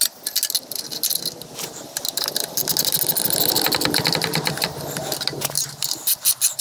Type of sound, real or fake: real